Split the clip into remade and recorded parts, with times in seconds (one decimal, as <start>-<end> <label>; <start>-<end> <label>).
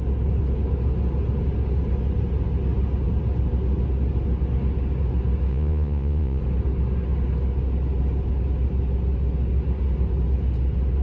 0.0-5.5 recorded; 5.5-6.4 remade; 6.4-11.0 recorded